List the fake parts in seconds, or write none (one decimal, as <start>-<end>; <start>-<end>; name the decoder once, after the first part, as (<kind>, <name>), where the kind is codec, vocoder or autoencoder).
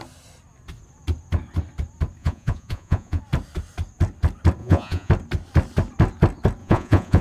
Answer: 2.2-3.2 (vocoder, Vocos); 4.6-5.1; 6.6-7.2